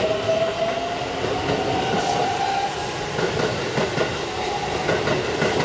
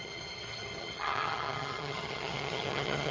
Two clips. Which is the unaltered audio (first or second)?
first